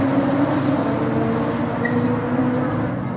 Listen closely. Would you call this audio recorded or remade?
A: recorded